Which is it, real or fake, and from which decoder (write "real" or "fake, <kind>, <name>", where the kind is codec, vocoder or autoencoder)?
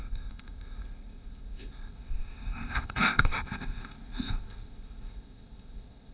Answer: fake, codec, ZipCodec